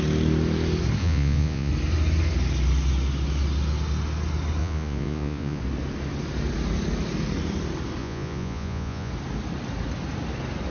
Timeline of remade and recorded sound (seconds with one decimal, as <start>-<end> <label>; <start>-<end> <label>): 0.0-1.0 recorded; 1.0-1.7 remade; 1.7-4.6 recorded; 4.6-5.6 remade; 5.6-8.0 recorded; 8.0-9.1 remade; 9.1-10.7 recorded